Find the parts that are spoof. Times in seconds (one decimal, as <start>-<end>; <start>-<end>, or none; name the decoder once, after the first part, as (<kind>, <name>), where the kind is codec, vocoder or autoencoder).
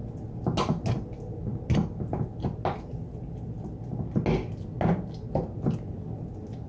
none